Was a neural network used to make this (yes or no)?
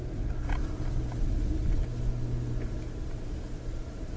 no